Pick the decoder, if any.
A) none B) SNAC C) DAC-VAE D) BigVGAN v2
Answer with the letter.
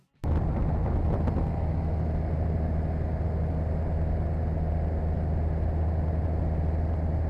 A